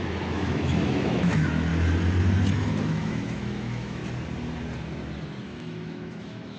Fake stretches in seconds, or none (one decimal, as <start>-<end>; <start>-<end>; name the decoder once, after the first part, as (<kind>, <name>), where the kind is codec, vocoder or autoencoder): 0.0-1.7 (autoencoder, DAC-VAE); 2.5-4.0; 5.4-6.6